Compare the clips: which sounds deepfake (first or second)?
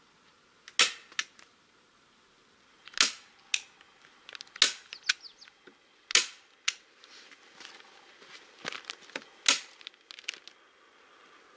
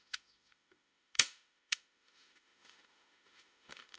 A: second